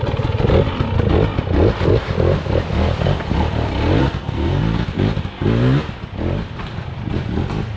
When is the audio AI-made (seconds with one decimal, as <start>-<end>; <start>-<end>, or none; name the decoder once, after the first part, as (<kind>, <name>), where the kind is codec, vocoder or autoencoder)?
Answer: 4.0-4.6 (codec, SNAC)